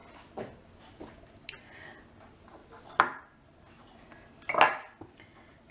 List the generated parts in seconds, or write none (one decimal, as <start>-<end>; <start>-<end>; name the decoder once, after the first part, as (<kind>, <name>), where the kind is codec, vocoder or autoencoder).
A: 0.0-0.8 (vocoder, BigVGAN v2); 2.6-3.6